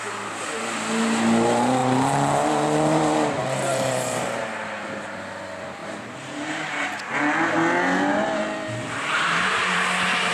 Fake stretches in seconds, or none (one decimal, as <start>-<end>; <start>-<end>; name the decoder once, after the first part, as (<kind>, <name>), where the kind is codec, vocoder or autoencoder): 1.8-4.5 (vocoder, BigVGAN v2); 5.8-7.2; 8.1-10.3